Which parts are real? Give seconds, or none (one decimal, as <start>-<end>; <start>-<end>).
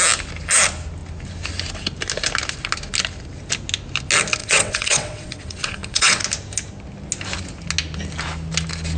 0.0-4.4; 6.2-9.0